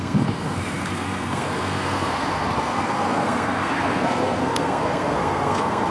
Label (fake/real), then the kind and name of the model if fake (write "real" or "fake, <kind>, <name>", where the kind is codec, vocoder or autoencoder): fake, codec, SNAC